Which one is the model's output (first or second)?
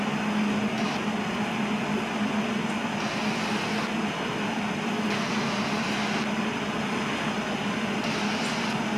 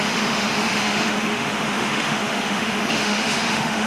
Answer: second